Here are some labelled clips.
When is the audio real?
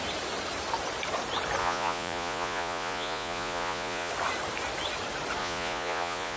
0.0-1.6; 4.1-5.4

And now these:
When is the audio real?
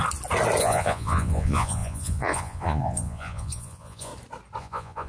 0.0-0.6; 4.1-4.6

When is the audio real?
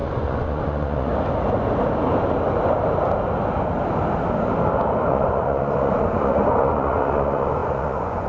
1.1-5.1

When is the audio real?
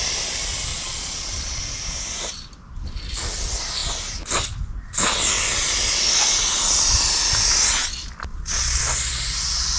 0.0-0.7; 1.6-8.3; 8.8-9.8